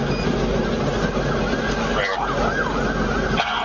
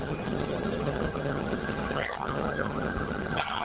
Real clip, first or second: first